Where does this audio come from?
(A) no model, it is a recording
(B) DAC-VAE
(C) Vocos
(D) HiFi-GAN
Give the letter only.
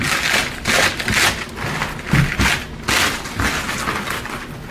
A